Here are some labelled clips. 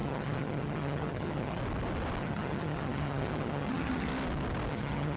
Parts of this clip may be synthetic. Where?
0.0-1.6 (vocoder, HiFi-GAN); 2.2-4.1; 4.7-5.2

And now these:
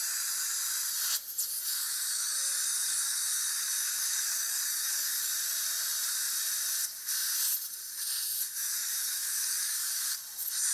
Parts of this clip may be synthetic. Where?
1.7-5.3 (codec, DAC); 8.6-10.2